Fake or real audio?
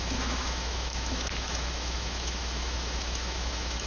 fake